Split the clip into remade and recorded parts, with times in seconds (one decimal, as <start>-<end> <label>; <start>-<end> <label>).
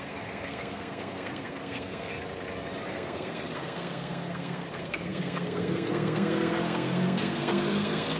0.0-2.1 remade; 2.1-2.9 recorded; 2.9-8.2 remade